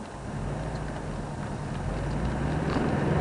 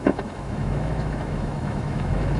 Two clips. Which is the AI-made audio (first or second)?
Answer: second